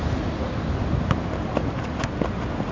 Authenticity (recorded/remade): recorded